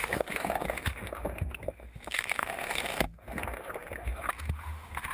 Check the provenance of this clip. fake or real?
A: fake